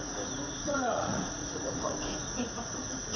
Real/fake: fake